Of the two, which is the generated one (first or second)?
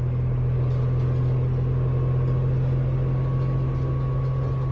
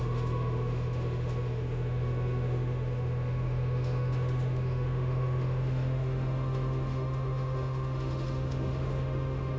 second